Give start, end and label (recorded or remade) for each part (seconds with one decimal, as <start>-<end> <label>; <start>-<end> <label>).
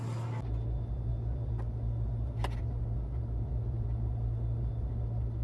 0.0-5.4 recorded